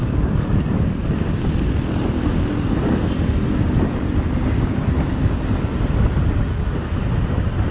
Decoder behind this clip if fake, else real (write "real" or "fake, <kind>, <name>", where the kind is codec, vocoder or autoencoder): real